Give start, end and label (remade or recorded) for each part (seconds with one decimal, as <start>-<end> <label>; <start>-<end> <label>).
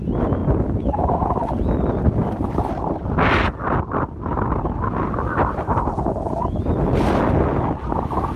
0.0-8.4 recorded